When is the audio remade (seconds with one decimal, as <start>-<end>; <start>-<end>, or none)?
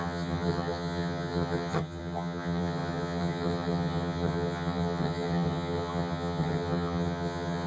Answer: 0.0-7.7